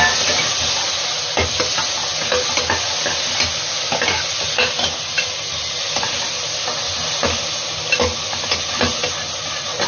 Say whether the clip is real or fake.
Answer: real